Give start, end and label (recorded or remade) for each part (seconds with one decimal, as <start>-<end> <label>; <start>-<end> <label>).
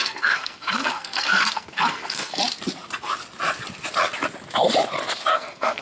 0.0-2.4 remade; 2.4-5.3 recorded; 5.3-5.8 remade